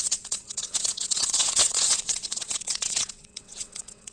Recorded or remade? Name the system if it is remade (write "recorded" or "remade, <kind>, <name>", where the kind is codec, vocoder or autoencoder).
remade, vocoder, WaveNeXt